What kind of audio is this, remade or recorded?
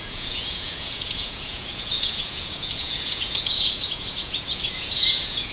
remade